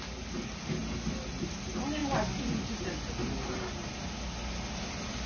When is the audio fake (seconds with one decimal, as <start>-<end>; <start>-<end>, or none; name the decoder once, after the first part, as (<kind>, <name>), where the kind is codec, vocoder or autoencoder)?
none